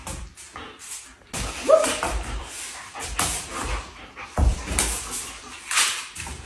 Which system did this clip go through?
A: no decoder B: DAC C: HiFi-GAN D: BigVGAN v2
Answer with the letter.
D